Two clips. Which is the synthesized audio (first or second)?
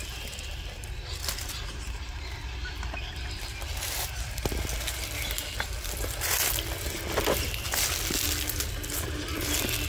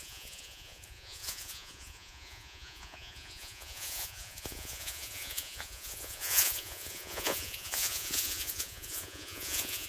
second